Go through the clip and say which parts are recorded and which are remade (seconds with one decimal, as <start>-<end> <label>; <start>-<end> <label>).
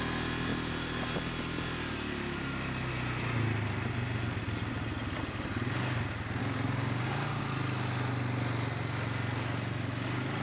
0.0-6.4 recorded; 6.4-7.4 remade; 7.4-10.4 recorded